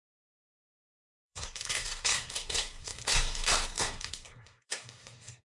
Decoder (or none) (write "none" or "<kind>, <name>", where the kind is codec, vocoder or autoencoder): codec, SNAC